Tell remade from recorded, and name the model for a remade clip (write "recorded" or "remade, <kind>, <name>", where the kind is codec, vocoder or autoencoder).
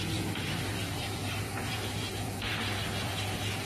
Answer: remade, vocoder, BigVGAN v2